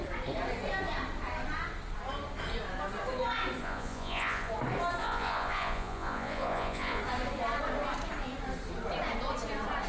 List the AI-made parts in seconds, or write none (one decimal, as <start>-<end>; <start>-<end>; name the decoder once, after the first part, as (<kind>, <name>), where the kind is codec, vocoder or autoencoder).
3.6-4.5 (vocoder, Vocos); 5.0-7.0